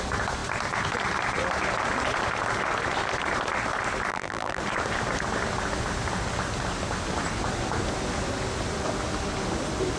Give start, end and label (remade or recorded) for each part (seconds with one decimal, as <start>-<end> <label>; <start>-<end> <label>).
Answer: 0.0-4.1 recorded; 4.1-4.6 remade; 4.6-10.0 recorded